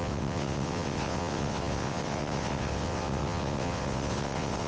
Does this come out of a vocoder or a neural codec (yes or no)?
yes